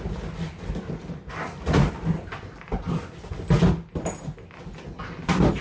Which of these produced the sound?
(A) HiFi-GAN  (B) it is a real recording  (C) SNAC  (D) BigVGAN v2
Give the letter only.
B